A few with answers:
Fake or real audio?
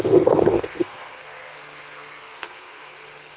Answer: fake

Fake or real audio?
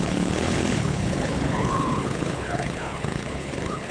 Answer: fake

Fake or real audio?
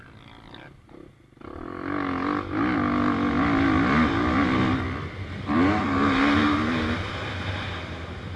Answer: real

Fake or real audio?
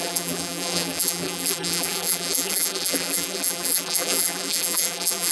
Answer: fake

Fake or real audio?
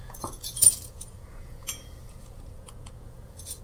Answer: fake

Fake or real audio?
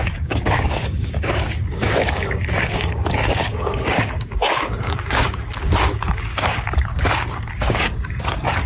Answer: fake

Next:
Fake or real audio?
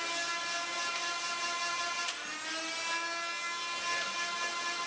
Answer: real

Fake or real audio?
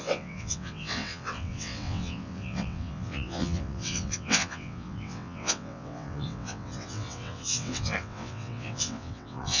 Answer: fake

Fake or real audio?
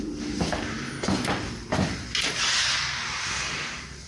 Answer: real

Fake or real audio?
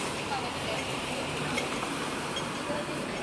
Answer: fake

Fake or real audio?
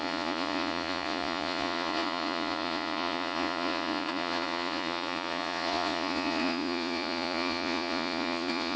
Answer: fake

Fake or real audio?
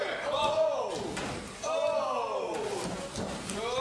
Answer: real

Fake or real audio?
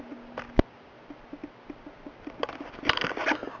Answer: real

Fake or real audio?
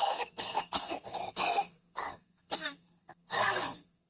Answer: fake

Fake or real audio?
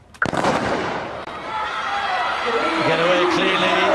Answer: fake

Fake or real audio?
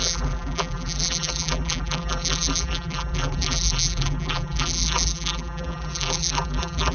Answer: fake